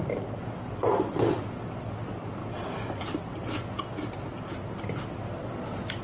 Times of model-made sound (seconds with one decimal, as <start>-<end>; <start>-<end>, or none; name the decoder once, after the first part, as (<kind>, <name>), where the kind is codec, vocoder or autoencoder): none